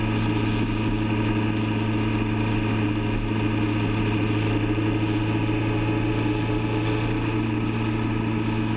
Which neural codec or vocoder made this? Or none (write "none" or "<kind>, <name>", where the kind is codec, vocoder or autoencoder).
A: none